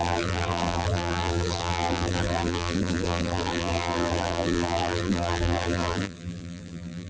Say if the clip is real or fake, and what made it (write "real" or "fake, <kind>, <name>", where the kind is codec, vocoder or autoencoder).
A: fake, vocoder, BigVGAN v2